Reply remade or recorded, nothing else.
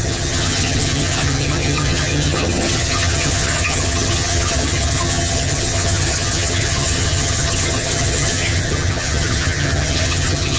remade